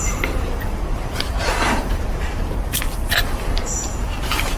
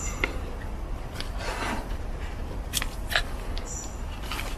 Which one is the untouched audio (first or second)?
second